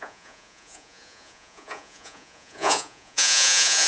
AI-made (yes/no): yes